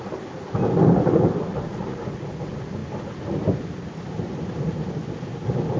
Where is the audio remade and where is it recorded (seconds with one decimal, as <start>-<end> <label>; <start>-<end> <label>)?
0.0-1.5 recorded; 1.5-2.0 remade; 2.0-5.8 recorded